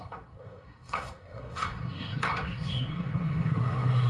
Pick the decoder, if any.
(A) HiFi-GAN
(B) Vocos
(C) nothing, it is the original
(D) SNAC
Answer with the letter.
D